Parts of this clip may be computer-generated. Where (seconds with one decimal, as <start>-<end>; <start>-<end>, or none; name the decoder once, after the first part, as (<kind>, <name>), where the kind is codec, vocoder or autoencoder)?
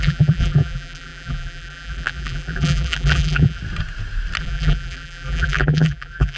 0.0-3.6 (vocoder, BigVGAN v2); 4.4-6.4